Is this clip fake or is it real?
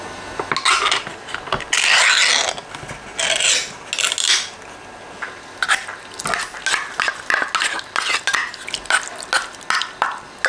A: real